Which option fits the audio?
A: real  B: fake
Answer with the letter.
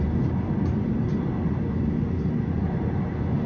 A